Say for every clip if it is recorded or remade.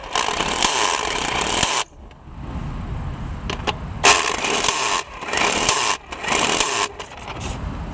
recorded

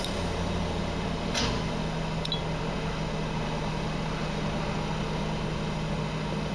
recorded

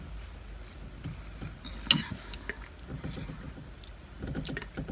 recorded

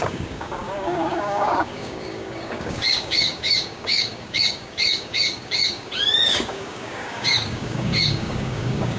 remade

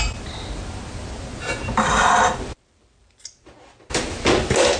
recorded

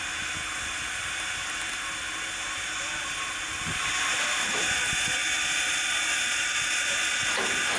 recorded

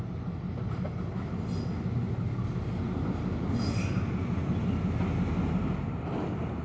recorded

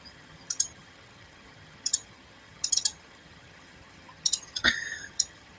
remade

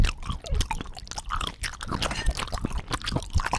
recorded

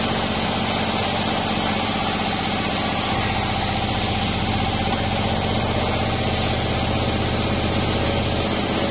recorded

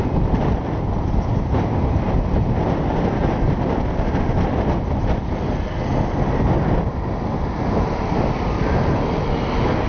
recorded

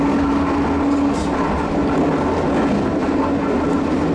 recorded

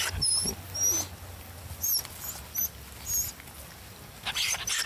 recorded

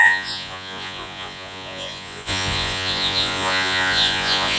remade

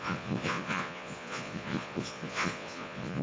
remade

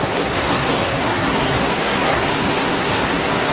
remade